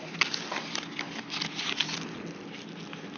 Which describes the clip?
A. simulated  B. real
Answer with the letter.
B